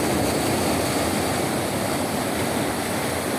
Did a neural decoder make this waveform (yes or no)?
no